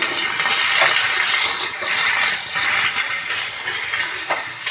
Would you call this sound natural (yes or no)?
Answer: yes